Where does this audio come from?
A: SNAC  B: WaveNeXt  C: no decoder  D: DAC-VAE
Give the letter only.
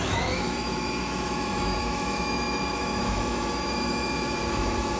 D